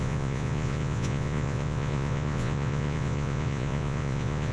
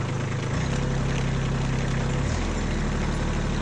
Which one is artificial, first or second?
first